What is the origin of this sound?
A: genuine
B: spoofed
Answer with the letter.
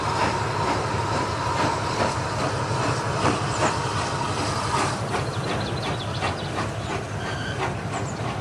A